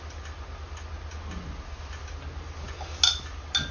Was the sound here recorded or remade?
recorded